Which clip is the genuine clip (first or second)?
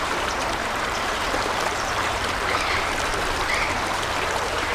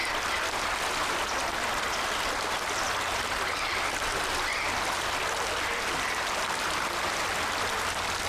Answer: second